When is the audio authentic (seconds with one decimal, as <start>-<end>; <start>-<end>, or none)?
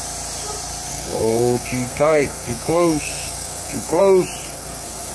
0.0-0.9; 4.0-4.4